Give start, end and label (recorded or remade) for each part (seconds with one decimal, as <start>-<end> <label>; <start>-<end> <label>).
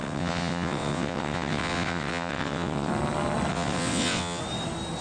0.0-2.9 remade; 2.9-3.5 recorded; 3.5-4.4 remade; 4.4-5.0 recorded